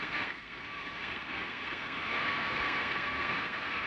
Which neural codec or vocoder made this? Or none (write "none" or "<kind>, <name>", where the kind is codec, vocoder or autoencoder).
codec, SNAC